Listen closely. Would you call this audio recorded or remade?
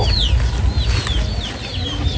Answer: recorded